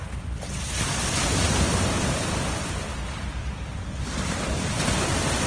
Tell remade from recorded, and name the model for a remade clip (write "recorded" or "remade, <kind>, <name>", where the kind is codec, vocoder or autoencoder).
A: recorded